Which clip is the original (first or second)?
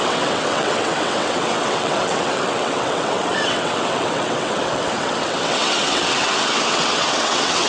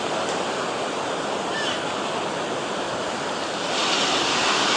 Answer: second